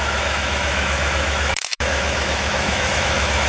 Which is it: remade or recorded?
remade